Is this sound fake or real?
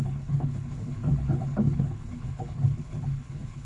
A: fake